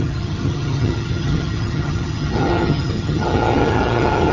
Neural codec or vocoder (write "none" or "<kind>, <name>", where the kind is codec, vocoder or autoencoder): vocoder, HiFi-GAN